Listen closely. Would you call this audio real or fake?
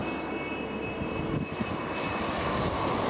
real